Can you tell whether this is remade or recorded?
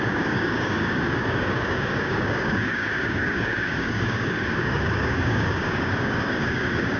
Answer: remade